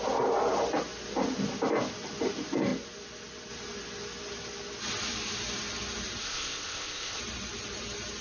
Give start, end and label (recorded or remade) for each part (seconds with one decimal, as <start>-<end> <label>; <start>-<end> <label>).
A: 0.0-6.2 recorded; 6.2-7.2 remade; 7.2-8.2 recorded